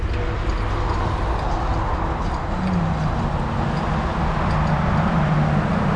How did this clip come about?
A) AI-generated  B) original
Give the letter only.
B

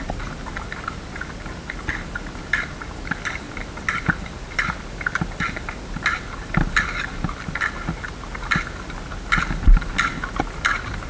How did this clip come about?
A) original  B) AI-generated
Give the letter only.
A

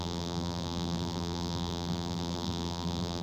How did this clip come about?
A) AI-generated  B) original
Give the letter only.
A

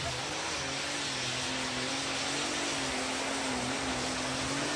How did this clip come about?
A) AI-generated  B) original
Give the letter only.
B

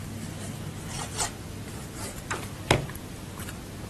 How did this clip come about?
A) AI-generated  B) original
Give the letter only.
B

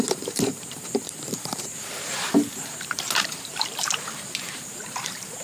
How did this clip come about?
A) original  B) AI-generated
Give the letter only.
B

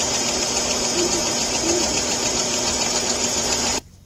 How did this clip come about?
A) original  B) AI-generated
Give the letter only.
B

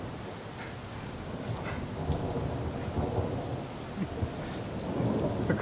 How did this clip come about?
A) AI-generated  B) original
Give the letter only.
B